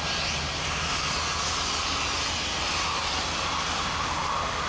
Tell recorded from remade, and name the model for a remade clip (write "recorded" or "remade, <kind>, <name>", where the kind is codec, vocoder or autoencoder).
recorded